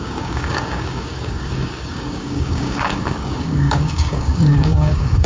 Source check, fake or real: fake